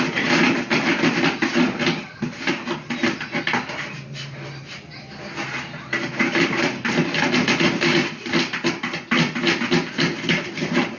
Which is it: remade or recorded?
recorded